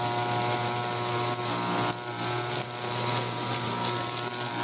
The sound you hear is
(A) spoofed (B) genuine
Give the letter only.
B